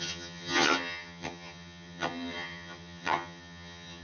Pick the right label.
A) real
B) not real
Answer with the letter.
B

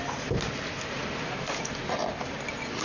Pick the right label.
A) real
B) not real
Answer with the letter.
A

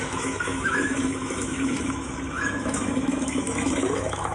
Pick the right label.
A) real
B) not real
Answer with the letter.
B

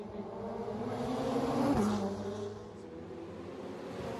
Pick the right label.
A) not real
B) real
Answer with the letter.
B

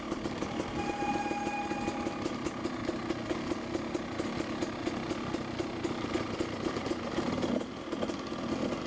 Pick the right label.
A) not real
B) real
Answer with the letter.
B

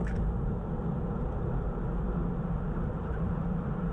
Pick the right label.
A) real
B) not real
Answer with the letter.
A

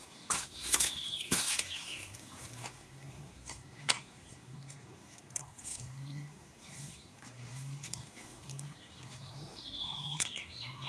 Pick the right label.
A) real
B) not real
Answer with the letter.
B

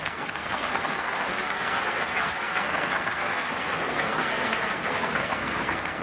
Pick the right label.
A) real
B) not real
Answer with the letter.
B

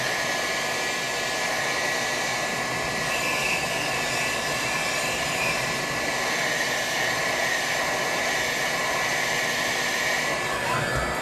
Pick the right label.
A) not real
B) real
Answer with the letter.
B